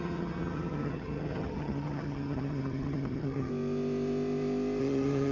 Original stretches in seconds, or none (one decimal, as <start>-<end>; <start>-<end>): 3.5-4.8